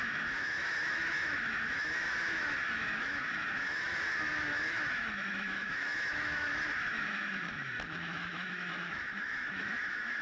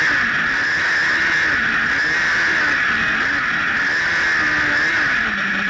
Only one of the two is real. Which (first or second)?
second